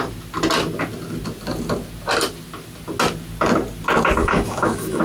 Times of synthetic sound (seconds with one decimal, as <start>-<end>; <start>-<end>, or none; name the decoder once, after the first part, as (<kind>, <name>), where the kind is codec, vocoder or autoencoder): 4.2-5.0 (autoencoder, DAC-VAE)